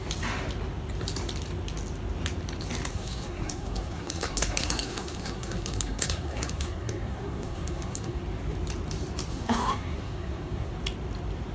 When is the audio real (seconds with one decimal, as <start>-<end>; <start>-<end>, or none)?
0.0-2.9; 8.2-9.3; 10.7-11.5